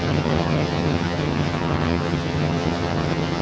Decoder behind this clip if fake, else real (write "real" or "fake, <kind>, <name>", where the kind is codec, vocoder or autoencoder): fake, vocoder, HiFi-GAN